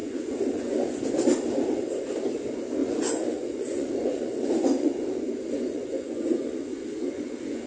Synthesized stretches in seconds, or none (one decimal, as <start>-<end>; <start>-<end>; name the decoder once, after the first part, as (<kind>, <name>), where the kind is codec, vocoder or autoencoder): 0.0-1.0 (vocoder, Vocos); 2.8-7.7